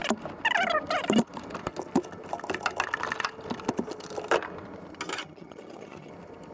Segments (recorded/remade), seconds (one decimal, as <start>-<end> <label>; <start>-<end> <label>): 0.0-5.2 recorded; 5.2-6.1 remade; 6.1-6.5 recorded